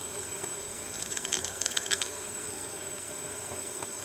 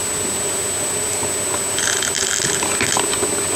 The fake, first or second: first